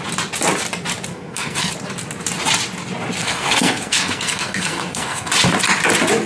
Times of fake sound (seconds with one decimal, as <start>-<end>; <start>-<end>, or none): 1.1-1.7; 3.2-5.3